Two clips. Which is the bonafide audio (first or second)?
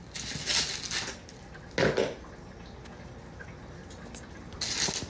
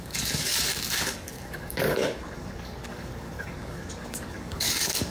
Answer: first